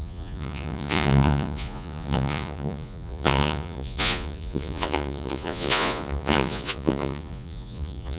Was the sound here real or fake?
fake